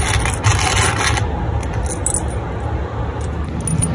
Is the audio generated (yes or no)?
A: no